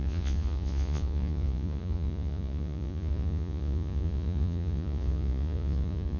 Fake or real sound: fake